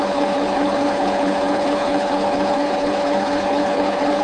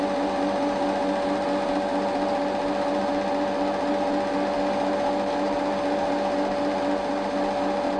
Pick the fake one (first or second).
first